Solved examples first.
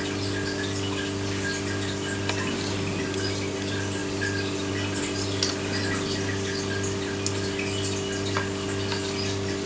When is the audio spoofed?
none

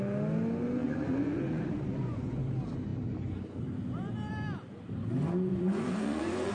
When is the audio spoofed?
0.8-2.4 (vocoder, Vocos); 5.5-6.5

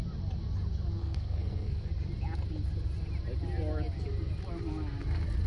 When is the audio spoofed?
1.0-1.9 (codec, SNAC)

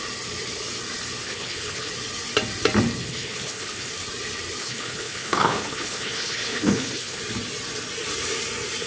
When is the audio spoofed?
1.2-1.9 (codec, HILCodec); 3.0-3.9; 4.6-7.2

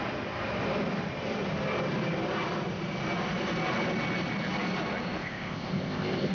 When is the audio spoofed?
5.2-6.3 (codec, ZipCodec)